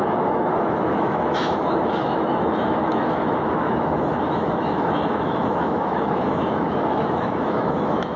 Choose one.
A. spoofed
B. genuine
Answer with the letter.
A